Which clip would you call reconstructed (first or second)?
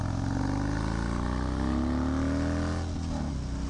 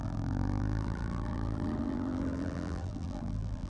second